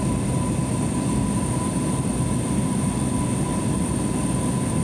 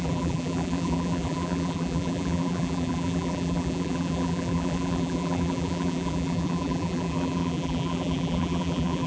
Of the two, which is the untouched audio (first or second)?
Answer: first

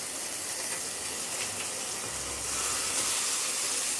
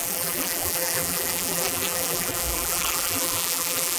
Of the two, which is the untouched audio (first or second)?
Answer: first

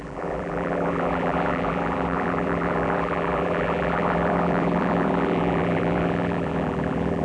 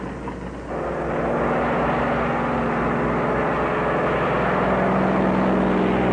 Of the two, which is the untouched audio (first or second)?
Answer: second